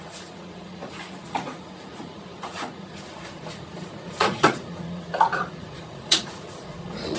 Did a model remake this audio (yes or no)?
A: yes